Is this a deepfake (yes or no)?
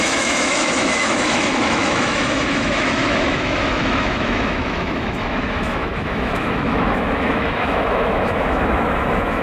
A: yes